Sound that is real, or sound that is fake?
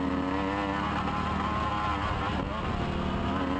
real